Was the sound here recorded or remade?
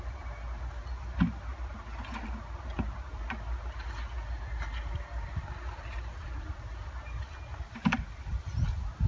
recorded